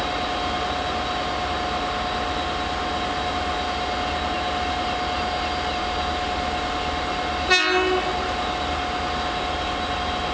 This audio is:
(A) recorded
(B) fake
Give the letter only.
A